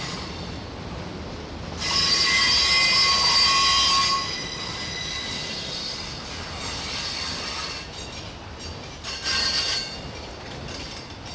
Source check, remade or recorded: recorded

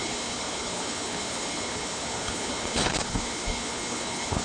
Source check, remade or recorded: remade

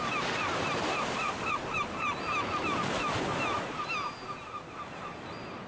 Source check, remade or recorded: recorded